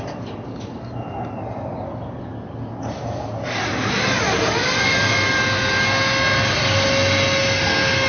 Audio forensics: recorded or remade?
recorded